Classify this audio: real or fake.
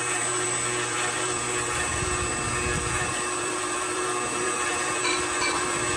fake